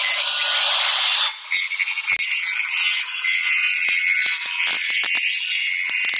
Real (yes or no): yes